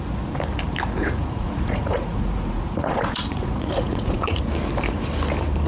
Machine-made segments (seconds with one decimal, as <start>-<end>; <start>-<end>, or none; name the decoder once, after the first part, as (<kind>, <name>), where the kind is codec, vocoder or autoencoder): 1.0-4.4 (vocoder, Vocos)